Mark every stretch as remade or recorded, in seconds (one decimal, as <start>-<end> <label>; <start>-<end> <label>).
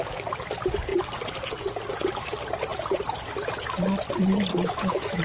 0.0-4.5 recorded; 4.5-5.2 remade